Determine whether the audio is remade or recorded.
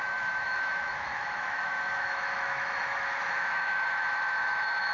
remade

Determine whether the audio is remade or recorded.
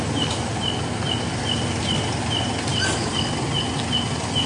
recorded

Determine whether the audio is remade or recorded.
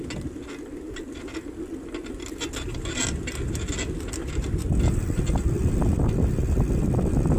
recorded